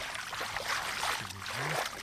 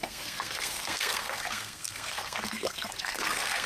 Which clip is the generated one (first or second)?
second